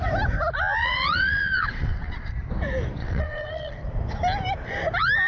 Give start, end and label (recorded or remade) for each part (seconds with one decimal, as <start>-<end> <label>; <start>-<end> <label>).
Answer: 0.0-0.8 recorded; 0.8-2.3 remade; 2.3-3.0 recorded; 3.0-3.7 remade; 3.7-5.3 recorded

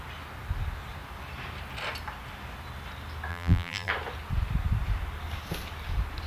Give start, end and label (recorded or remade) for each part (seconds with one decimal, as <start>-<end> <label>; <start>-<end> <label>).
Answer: 0.0-3.3 recorded; 3.3-3.9 remade; 3.9-6.3 recorded

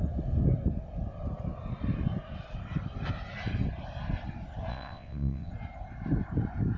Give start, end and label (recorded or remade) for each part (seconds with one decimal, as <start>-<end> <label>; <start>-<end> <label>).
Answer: 0.0-4.7 recorded; 4.7-5.5 remade; 5.5-6.8 recorded